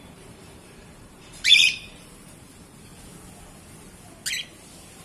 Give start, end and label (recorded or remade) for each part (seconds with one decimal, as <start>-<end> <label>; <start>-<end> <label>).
0.0-2.9 remade; 2.9-4.3 recorded; 4.3-5.0 remade